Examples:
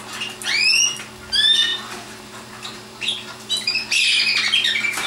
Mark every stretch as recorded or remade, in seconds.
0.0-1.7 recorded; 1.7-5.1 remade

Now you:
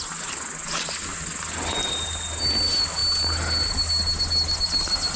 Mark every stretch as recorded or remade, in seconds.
0.0-5.2 recorded